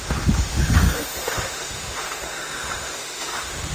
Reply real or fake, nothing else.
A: fake